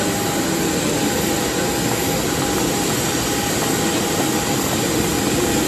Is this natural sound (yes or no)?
yes